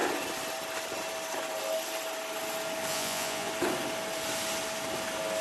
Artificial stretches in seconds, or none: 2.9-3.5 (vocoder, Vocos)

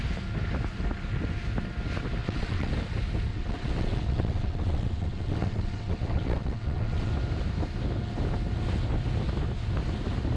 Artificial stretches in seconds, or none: 2.2-2.7 (vocoder, WaveNeXt); 3.3-7.1

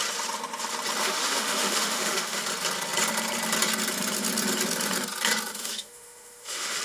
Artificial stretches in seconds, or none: 1.0-2.4 (autoencoder, DAC-VAE); 5.5-6.8

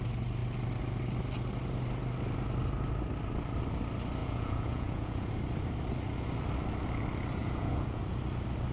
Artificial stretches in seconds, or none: 4.2-5.3 (vocoder, Vocos); 7.4-8.0

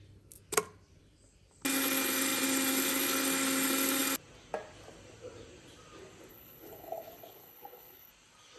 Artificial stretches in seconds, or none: 6.3-8.1 (codec, HILCodec)

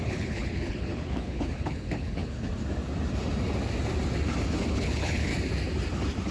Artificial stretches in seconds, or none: 0.0-2.5 (codec, HILCodec); 4.7-5.3

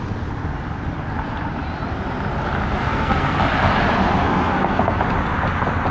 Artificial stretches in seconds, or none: 2.8-3.4 (codec, SNAC); 4.2-5.0